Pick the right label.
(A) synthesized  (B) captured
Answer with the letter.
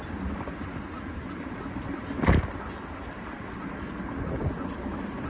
B